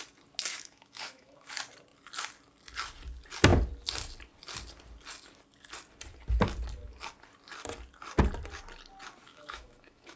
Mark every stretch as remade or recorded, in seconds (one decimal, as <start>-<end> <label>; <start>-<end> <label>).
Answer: 0.0-0.5 recorded; 0.5-1.5 remade; 1.5-9.3 recorded; 9.3-10.2 remade